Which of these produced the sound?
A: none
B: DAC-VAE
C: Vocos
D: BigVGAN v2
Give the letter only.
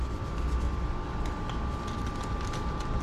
A